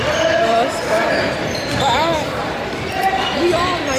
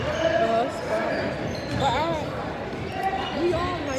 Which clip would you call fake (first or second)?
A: first